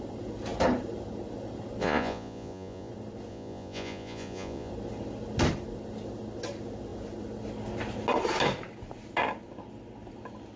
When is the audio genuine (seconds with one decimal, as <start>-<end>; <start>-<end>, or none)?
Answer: 0.0-1.8; 2.9-3.3; 4.7-10.6